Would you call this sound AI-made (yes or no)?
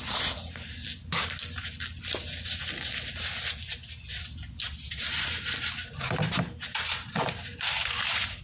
no